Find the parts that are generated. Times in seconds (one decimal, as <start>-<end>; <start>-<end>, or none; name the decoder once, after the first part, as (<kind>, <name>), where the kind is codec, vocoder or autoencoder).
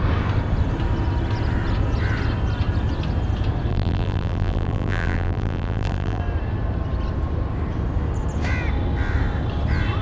3.7-6.2 (vocoder, BigVGAN v2)